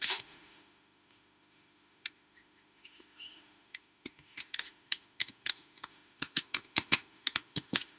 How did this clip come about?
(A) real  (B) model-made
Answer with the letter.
B